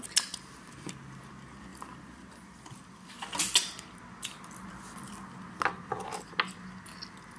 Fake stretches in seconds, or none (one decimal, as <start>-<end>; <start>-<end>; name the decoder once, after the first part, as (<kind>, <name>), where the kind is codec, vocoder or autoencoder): none